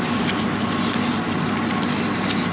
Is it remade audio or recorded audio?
recorded